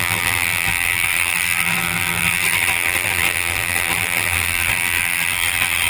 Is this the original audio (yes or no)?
no